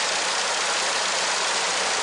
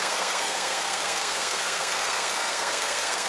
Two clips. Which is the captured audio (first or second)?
first